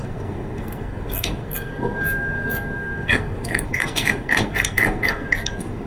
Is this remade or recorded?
remade